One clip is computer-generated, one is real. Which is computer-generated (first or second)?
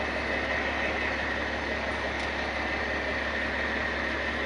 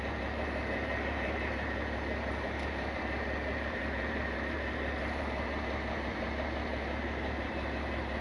second